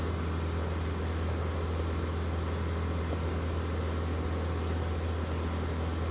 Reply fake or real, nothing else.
real